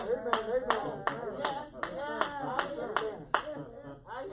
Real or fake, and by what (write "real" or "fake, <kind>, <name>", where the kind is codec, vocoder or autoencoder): real